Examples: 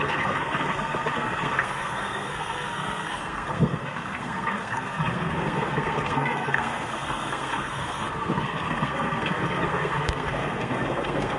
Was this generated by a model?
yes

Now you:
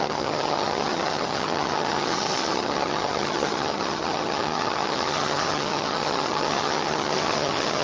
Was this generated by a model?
yes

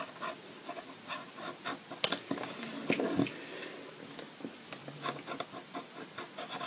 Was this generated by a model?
no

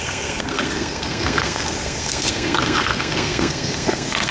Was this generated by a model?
yes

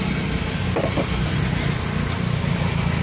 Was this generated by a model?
no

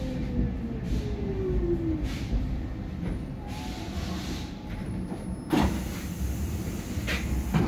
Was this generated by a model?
no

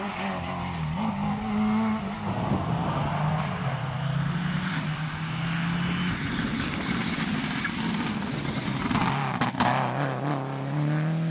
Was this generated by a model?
no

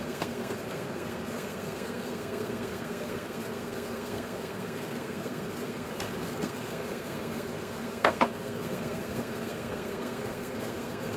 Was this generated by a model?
yes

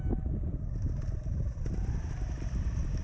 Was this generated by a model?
no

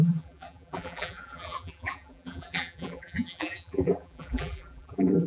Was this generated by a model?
yes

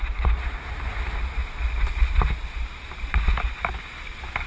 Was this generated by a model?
no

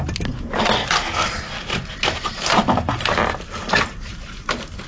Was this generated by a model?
no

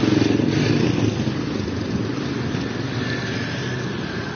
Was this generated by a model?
no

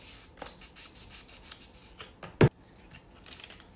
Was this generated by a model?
no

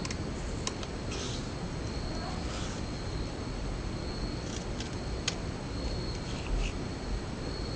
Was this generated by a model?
no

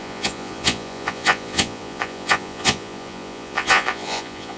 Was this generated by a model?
yes